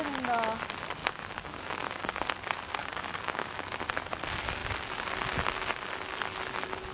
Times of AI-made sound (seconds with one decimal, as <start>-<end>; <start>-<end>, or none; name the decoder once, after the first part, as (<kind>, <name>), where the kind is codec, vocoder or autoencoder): 1.0-2.2 (codec, DAC); 2.8-3.6